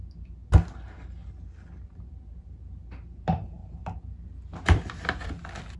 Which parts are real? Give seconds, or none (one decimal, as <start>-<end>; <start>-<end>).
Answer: 0.0-5.8